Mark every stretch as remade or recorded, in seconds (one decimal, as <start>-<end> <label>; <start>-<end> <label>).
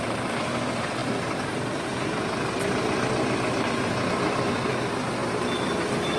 0.0-6.2 recorded